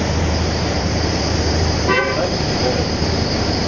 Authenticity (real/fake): fake